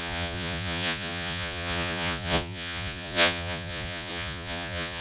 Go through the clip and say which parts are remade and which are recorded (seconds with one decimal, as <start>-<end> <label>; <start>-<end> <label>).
0.0-5.0 remade

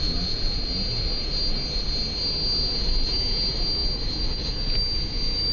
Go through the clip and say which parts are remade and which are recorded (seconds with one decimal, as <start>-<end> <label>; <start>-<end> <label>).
0.0-5.5 recorded

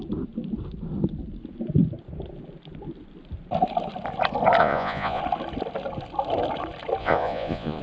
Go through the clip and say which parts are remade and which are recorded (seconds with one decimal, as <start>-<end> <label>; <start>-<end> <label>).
0.0-4.6 recorded; 4.6-5.2 remade; 5.2-7.0 recorded; 7.0-7.8 remade

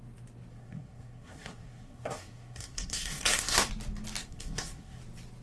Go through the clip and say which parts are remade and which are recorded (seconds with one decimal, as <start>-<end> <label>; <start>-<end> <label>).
0.0-0.5 recorded; 0.5-3.7 remade; 3.7-4.2 recorded; 4.2-5.0 remade; 5.0-5.4 recorded

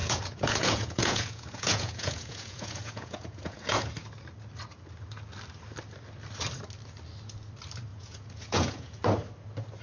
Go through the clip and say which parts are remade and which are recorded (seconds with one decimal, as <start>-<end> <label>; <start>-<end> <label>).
0.0-3.9 remade; 3.9-7.9 recorded; 7.9-8.9 remade; 8.9-9.8 recorded

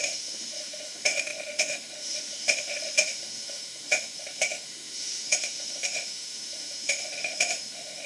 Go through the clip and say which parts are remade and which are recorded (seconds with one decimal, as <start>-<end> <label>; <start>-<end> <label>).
0.0-8.1 remade

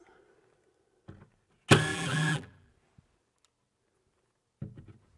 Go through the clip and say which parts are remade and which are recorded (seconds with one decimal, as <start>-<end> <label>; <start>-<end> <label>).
0.0-1.9 recorded; 1.9-2.7 remade; 2.7-5.2 recorded